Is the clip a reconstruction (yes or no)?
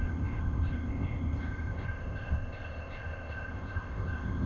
yes